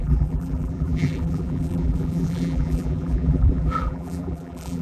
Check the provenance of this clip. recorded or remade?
remade